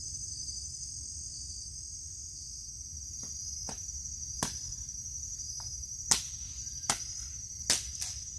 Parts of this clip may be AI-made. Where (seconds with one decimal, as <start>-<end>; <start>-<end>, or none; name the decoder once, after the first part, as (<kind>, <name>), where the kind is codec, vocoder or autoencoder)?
none